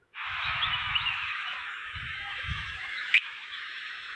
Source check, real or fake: fake